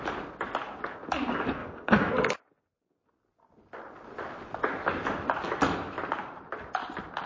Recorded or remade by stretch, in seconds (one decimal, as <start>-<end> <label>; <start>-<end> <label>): 0.0-1.6 recorded; 1.6-2.1 remade; 2.1-7.3 recorded